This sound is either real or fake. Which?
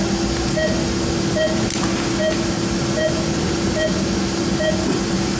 real